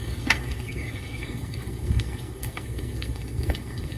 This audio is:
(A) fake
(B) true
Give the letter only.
A